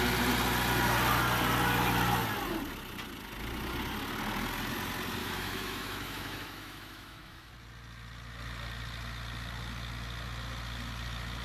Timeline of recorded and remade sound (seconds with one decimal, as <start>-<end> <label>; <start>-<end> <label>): 0.0-5.2 recorded; 5.2-7.5 remade; 7.5-11.4 recorded